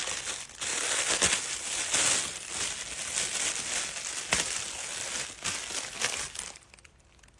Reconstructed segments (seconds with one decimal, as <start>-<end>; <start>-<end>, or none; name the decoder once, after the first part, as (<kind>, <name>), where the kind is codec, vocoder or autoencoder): none